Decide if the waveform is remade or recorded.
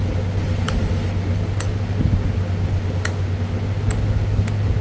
recorded